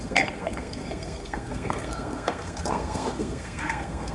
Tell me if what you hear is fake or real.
fake